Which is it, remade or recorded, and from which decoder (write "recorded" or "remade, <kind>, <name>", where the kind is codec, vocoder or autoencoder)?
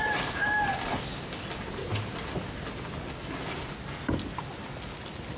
recorded